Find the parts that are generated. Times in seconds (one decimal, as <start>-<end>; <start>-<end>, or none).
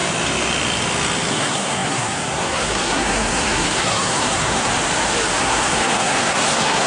1.3-4.7; 5.4-6.9